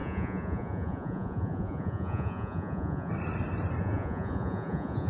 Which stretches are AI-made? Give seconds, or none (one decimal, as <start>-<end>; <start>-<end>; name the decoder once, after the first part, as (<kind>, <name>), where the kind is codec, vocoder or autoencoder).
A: 0.0-3.1 (vocoder, Vocos); 3.8-5.1